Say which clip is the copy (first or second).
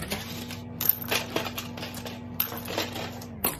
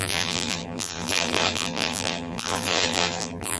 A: second